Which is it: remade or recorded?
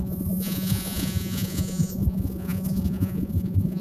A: remade